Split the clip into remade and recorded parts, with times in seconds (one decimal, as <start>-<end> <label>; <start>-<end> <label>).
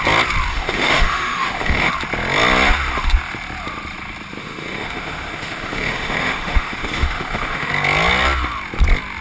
0.0-0.5 recorded; 0.5-1.9 remade; 1.9-4.4 recorded; 4.4-7.7 remade; 7.7-9.2 recorded